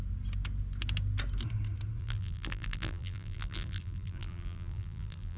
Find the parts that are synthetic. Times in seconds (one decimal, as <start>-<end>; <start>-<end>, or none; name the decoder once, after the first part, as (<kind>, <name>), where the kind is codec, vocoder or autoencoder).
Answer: 2.0-5.4 (vocoder, BigVGAN v2)